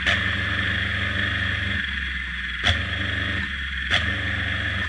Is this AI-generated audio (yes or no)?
no